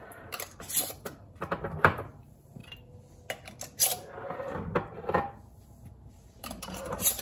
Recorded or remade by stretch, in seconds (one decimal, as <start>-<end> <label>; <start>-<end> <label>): 0.0-2.6 remade; 2.6-6.1 recorded; 6.1-7.2 remade